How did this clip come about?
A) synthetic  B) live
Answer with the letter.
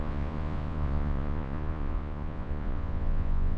A